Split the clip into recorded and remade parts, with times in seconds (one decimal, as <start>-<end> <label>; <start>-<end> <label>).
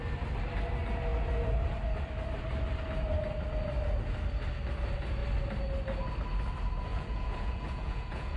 0.0-6.9 recorded; 6.9-8.4 remade